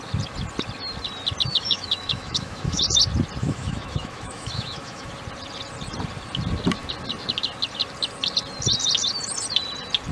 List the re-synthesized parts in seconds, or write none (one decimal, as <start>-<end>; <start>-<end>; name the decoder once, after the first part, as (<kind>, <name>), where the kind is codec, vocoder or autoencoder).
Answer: 1.5-2.8 (autoencoder, DAC-VAE); 3.4-5.1